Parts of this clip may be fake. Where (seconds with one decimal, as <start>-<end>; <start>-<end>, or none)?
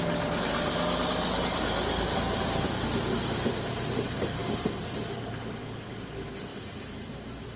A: none